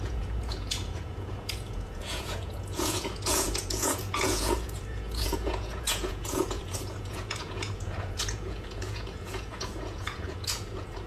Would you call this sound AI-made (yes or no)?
yes